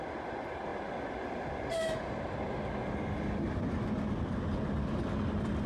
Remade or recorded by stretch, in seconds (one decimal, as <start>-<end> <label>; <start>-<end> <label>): 0.0-5.7 recorded